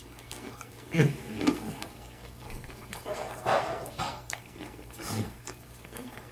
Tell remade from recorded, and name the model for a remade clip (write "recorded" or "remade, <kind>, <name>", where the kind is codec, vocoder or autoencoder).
remade, codec, SNAC